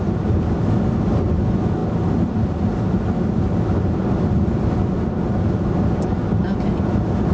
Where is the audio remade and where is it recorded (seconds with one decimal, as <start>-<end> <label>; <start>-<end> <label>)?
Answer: 0.0-7.3 recorded

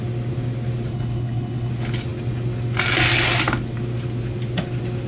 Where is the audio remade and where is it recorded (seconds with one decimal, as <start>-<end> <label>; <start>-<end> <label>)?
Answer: 0.0-0.9 recorded; 0.9-1.7 remade; 1.7-5.1 recorded

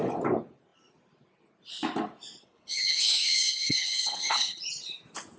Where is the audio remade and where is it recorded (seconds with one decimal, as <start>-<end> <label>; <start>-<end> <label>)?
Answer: 0.0-2.4 recorded; 2.4-4.6 remade; 4.6-5.4 recorded

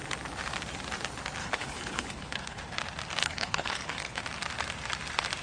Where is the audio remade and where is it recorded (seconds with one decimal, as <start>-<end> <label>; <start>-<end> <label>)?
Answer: 0.0-1.4 recorded; 1.4-2.6 remade; 2.6-3.2 recorded; 3.2-4.2 remade; 4.2-5.4 recorded